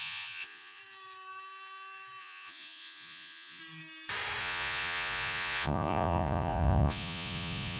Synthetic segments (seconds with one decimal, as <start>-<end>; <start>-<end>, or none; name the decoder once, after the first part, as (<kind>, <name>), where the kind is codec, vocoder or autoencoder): 0.0-0.8 (vocoder, Vocos); 2.2-3.6; 4.4-7.8